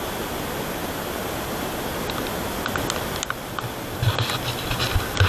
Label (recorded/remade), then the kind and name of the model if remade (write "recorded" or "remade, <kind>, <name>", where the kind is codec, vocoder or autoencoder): recorded